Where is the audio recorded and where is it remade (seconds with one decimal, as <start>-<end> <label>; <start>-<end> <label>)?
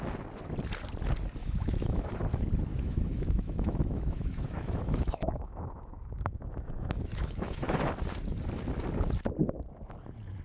0.0-1.4 recorded; 1.4-2.2 remade; 2.2-2.7 recorded; 2.7-7.9 remade; 7.9-10.4 recorded